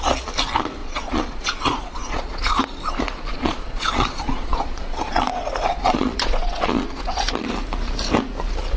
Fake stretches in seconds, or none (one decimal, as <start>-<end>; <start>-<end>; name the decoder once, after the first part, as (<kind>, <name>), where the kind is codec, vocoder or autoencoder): 0.8-2.6 (vocoder, Vocos); 3.3-7.2